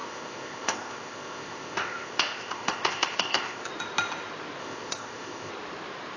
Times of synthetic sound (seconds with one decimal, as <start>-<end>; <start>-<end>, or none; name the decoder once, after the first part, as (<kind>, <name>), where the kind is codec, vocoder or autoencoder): 0.0-3.7 (codec, ZipCodec); 4.6-5.5